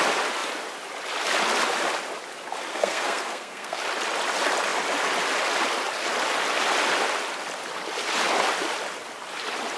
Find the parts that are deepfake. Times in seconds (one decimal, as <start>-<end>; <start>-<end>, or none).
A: 2.7-3.8